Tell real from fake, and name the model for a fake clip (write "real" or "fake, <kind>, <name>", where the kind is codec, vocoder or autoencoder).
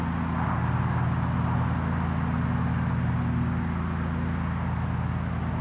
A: real